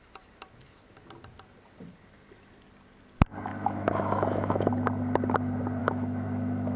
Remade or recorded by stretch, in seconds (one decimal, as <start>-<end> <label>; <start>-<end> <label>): 0.0-3.5 recorded; 3.5-4.7 remade; 4.7-5.8 recorded; 5.8-6.8 remade